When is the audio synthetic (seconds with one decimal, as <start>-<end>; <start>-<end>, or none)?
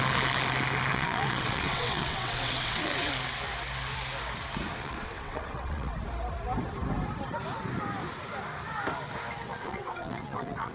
0.9-3.1; 4.8-5.9; 9.5-10.7